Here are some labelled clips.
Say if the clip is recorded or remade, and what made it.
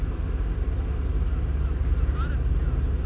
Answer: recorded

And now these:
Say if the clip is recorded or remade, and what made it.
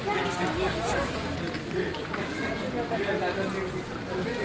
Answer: recorded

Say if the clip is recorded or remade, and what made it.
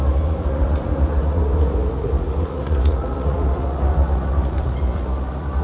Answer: remade, vocoder, Vocos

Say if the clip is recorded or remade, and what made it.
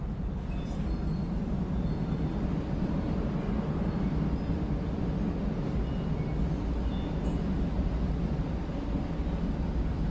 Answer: recorded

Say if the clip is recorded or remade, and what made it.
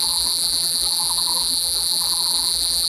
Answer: remade, vocoder, BigVGAN v2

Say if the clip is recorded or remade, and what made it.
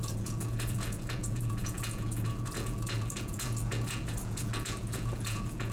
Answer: remade, vocoder, Vocos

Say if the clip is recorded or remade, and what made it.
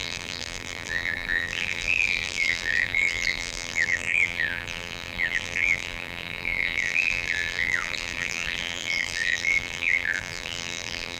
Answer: remade, vocoder, BigVGAN v2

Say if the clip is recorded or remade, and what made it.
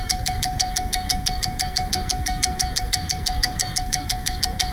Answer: remade, codec, SNAC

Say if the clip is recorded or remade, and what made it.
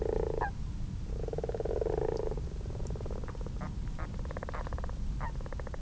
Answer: recorded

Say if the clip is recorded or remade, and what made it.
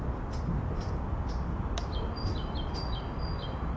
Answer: recorded